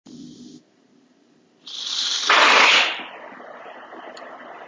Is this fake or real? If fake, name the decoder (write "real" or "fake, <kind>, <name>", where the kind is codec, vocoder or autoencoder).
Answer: real